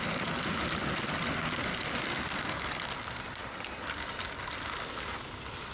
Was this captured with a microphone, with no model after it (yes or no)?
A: no